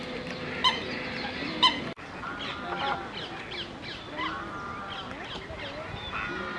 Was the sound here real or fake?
real